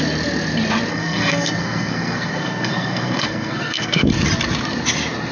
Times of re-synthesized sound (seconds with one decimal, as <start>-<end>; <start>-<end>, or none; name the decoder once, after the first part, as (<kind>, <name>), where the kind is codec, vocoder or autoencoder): 0.9-4.1 (codec, SNAC)